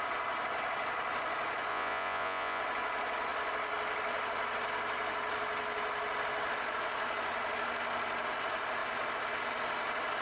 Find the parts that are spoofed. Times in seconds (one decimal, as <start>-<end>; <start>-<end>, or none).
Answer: 1.7-2.6